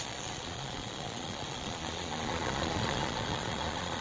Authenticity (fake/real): fake